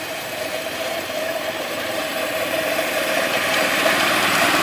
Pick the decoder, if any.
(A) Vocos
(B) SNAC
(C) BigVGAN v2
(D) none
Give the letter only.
C